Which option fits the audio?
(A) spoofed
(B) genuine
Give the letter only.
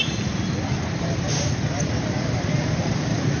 B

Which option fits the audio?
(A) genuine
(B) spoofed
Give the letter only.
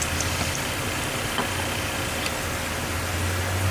A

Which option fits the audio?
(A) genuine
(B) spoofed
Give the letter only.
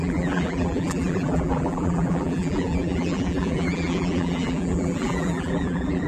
B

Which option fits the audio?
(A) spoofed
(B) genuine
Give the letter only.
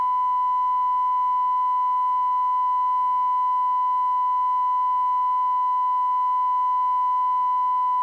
B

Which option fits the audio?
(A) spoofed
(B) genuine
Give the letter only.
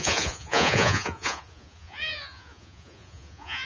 A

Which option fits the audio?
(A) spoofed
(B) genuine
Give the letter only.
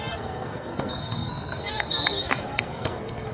A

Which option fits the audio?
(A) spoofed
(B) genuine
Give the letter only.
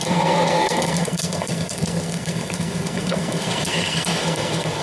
A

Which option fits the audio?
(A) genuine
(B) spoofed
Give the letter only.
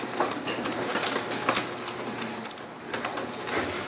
B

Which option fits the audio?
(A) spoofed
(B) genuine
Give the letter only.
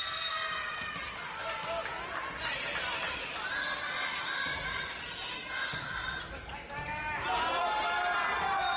B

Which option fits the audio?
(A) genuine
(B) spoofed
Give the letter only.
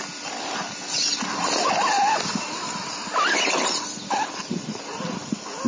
A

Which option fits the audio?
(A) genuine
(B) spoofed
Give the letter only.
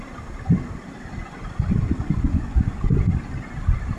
A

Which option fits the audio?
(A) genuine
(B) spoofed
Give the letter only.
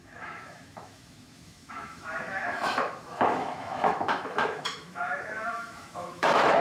B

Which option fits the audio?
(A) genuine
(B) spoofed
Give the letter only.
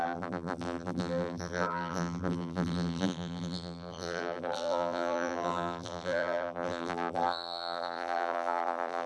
B